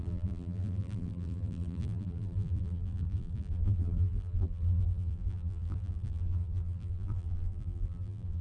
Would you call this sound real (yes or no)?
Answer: no